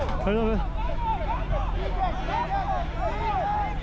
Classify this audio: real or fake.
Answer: real